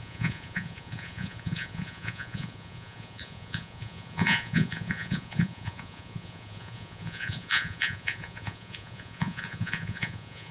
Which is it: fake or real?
fake